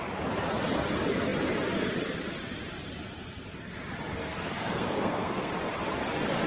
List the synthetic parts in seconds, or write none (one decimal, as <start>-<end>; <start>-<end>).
4.1-5.5